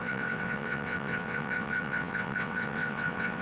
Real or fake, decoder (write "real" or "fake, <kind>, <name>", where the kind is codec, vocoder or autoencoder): fake, vocoder, WaveNeXt